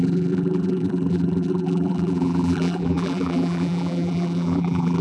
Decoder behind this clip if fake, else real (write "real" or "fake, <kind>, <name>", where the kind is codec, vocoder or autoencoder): fake, vocoder, BigVGAN v2